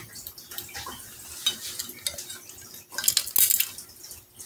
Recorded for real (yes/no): yes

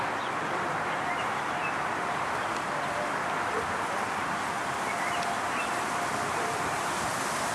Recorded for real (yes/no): no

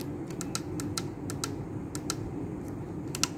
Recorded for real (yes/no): yes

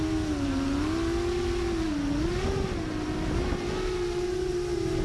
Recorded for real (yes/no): yes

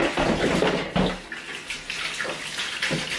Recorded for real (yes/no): yes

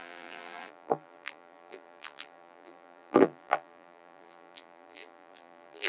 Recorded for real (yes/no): no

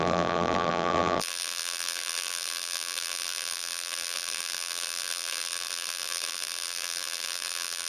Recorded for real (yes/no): no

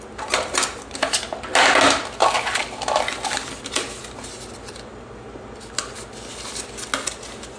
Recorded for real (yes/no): yes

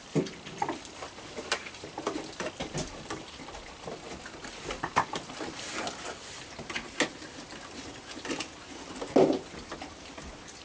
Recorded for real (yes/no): yes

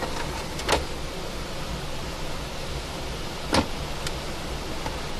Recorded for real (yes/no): yes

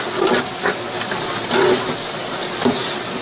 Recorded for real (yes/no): yes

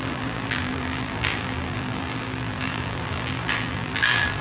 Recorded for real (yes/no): no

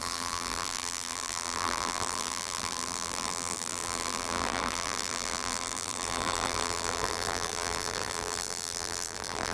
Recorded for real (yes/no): no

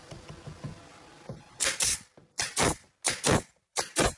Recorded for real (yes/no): yes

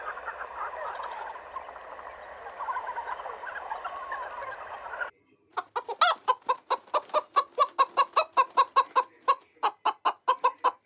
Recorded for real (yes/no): yes